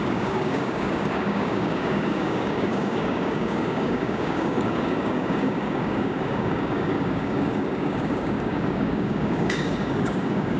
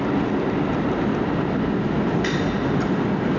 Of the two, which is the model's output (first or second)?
first